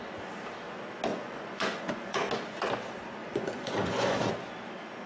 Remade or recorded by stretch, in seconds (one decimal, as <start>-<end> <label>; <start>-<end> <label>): 0.0-1.1 recorded; 1.1-2.2 remade; 2.2-3.2 recorded; 3.2-4.3 remade; 4.3-5.1 recorded